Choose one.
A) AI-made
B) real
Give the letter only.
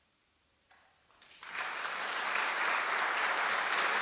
A